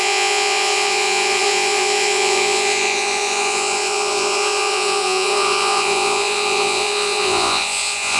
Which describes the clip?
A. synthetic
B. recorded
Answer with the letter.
A